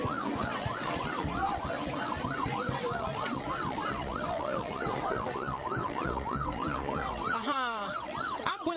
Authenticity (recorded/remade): remade